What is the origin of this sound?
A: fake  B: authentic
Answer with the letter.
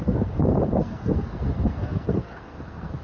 A